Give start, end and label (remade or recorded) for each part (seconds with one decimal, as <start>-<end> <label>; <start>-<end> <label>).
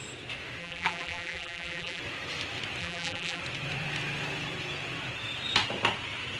0.0-0.6 recorded; 0.6-2.0 remade; 2.0-2.8 recorded; 2.8-3.4 remade; 3.4-6.4 recorded